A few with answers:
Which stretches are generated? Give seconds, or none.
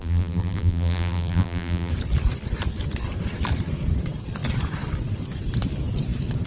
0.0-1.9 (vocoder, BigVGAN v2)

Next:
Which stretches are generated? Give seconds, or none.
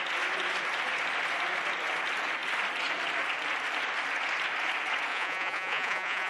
5.1-6.3 (vocoder, Vocos)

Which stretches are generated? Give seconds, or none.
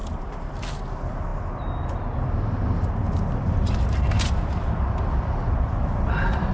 0.0-0.7 (vocoder, BigVGAN v2)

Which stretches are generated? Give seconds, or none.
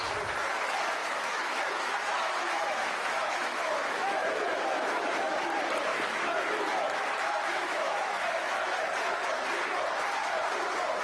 1.0-5.4 (autoencoder, DAC-VAE); 5.9-8.6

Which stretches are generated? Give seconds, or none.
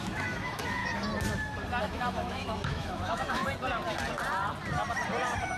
0.0-0.8 (autoencoder, DAC-VAE); 1.8-3.4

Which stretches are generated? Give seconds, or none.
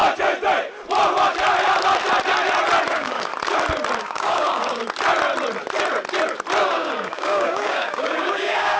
2.9-3.3 (codec, DAC); 4.0-4.8; 6.7-8.8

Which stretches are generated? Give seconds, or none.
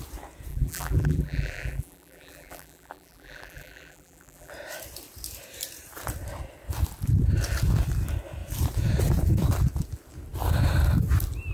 0.5-4.5 (vocoder, BigVGAN v2)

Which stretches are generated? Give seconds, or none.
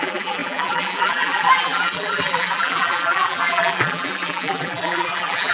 0.0-5.5 (vocoder, BigVGAN v2)